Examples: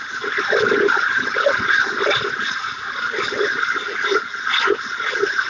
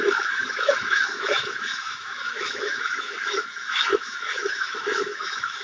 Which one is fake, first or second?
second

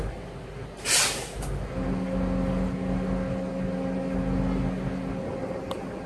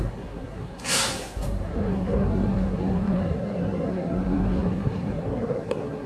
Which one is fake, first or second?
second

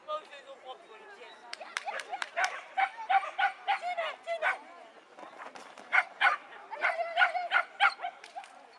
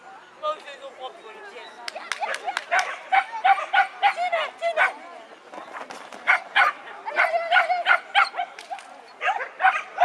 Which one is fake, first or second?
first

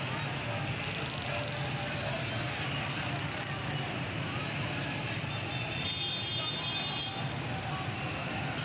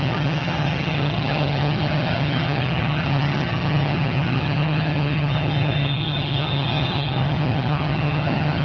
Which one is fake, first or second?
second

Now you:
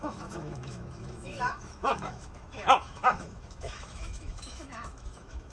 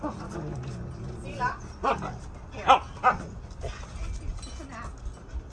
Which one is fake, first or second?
first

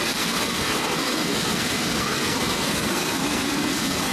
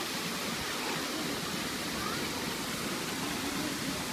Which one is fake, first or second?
first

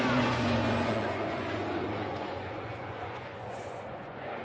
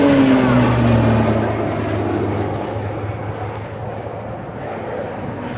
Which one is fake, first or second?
first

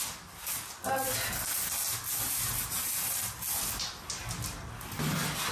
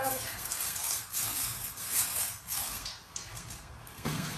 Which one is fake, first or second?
second